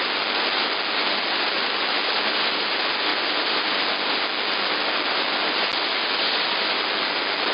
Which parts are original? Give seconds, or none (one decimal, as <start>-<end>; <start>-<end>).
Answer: 0.0-7.5